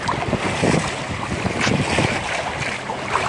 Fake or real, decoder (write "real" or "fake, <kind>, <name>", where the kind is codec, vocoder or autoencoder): real